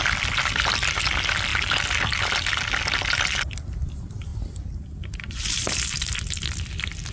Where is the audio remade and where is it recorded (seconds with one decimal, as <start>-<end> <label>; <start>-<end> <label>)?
0.0-7.1 recorded